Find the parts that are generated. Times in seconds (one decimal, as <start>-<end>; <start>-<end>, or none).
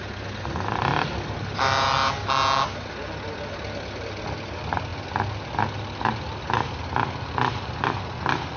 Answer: none